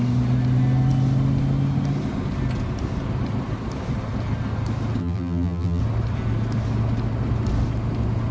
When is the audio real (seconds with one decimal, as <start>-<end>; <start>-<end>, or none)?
0.0-5.0; 5.8-8.3

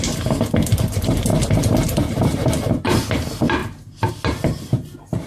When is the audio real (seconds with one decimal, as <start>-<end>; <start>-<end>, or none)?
0.0-5.3